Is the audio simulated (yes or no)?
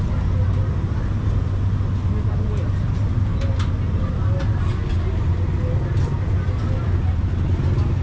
no